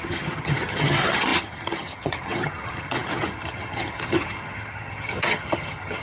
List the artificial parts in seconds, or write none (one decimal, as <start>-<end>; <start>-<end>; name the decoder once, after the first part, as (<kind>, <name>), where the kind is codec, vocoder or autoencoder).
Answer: 0.0-6.0 (vocoder, HiFi-GAN)